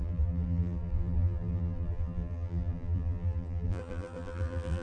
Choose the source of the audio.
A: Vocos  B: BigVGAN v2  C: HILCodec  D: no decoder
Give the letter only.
B